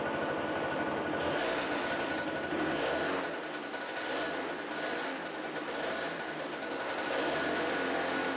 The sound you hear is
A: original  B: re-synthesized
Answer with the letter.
A